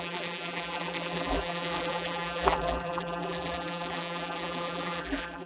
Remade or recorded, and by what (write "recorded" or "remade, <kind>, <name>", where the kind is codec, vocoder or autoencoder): remade, vocoder, BigVGAN v2